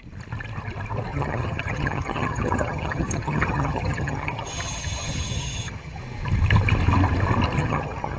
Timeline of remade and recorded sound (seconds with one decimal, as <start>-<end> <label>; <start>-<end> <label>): 0.0-1.1 recorded; 1.1-6.0 remade; 6.0-7.6 recorded; 7.6-8.2 remade